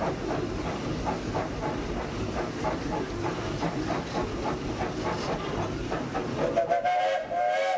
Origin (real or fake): real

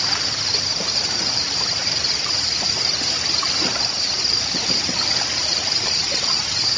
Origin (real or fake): fake